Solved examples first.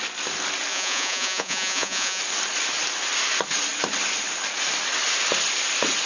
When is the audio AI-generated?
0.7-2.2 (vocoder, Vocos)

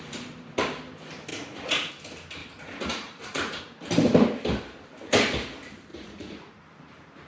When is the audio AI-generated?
1.3-1.9 (vocoder, Vocos); 2.4-3.6; 5.9-6.5

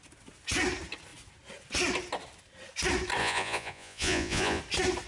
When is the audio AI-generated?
3.2-4.6 (vocoder, Vocos)

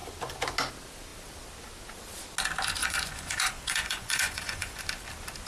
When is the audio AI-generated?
2.8-4.8 (vocoder, Vocos)